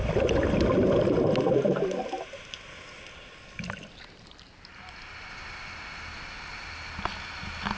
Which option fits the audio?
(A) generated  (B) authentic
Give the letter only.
B